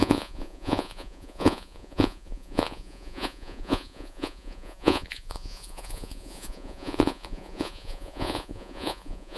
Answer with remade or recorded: remade